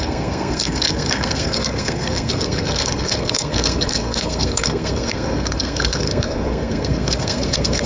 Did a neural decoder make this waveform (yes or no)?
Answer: yes